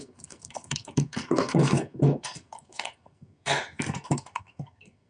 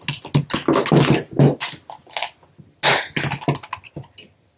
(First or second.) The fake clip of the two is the first